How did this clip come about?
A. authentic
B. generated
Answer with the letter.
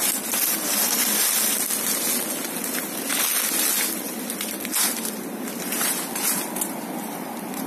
A